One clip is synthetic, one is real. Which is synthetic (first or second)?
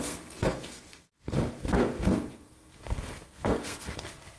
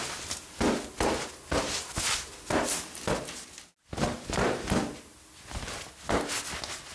first